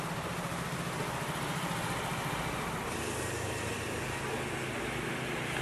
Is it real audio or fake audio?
real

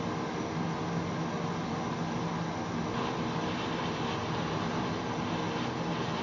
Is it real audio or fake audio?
real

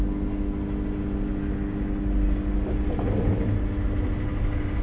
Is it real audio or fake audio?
real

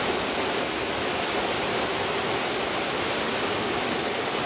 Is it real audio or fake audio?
real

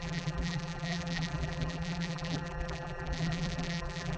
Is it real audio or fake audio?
fake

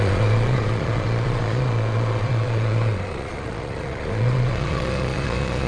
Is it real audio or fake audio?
fake